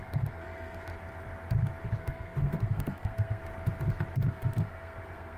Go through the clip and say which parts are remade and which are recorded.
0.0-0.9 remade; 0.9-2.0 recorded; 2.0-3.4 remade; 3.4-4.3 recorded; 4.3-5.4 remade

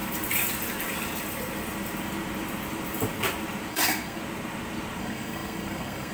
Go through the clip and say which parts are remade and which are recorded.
0.0-3.7 recorded; 3.7-4.2 remade; 4.2-5.0 recorded; 5.0-6.1 remade

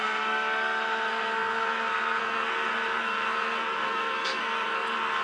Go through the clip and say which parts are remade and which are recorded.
0.0-5.2 remade

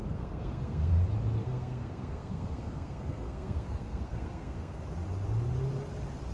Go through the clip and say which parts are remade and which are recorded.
0.0-0.9 remade; 0.9-1.4 recorded; 1.4-4.8 remade; 4.8-6.3 recorded

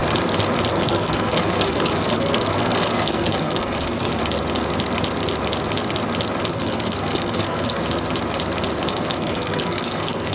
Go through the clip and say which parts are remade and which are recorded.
0.0-0.7 recorded; 0.7-4.2 remade; 4.2-6.5 recorded; 6.5-7.8 remade; 7.8-8.9 recorded; 8.9-10.3 remade

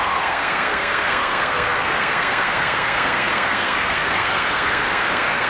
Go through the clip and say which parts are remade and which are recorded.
0.0-5.5 remade

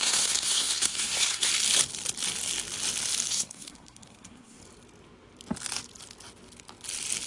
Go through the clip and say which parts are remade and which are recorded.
0.0-1.5 remade; 1.5-3.3 recorded; 3.3-4.6 remade; 4.6-7.3 recorded